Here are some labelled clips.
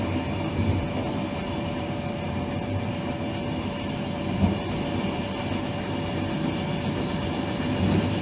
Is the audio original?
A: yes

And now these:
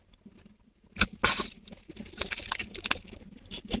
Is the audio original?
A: yes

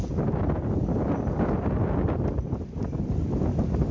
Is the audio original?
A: yes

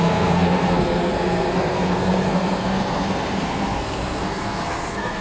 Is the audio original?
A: no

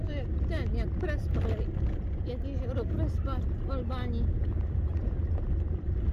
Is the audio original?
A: yes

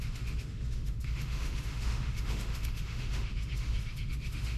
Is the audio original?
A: no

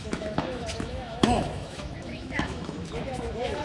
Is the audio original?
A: no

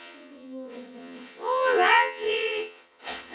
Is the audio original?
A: no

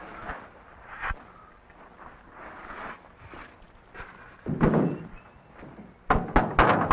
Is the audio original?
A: yes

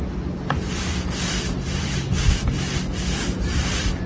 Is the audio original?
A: yes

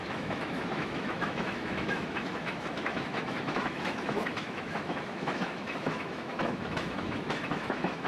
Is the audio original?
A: no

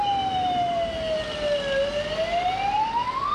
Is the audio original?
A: yes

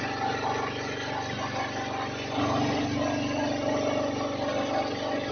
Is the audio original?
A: yes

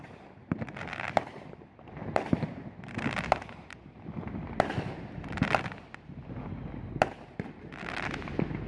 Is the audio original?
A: no